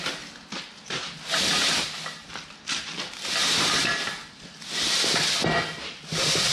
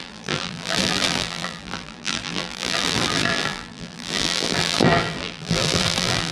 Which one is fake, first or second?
second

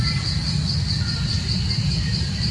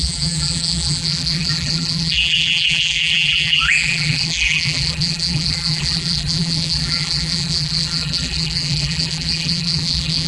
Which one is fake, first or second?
second